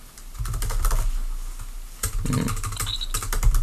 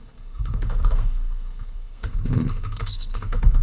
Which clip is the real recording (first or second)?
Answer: first